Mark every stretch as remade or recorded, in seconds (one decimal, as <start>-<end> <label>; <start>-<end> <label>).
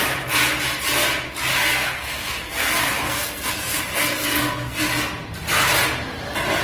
0.0-1.5 recorded; 1.5-4.8 remade; 4.8-6.6 recorded